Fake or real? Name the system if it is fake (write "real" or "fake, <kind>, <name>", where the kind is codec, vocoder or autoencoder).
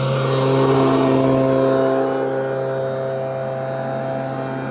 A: real